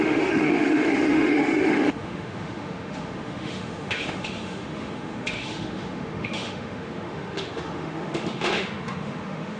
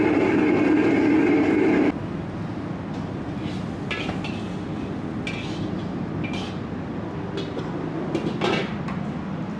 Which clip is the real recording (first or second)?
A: second